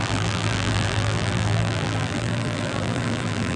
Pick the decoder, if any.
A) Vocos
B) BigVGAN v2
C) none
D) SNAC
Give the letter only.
B